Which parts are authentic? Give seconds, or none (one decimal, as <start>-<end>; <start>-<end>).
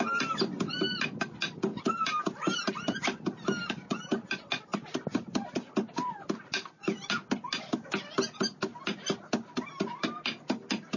0.0-1.7; 3.0-11.0